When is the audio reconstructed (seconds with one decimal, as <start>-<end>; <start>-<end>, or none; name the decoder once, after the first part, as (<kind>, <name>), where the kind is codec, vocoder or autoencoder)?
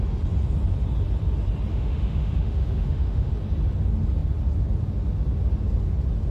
1.7-3.3 (autoencoder, DAC-VAE)